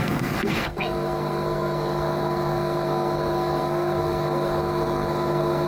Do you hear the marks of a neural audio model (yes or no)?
yes